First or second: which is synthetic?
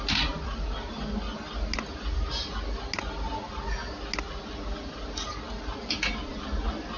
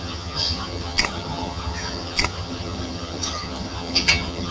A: second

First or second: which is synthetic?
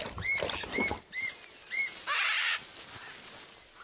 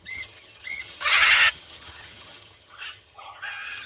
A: second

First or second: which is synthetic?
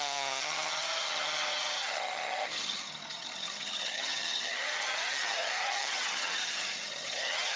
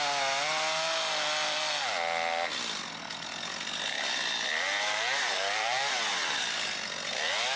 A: first